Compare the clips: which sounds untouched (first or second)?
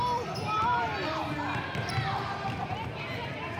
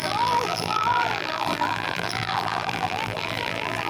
first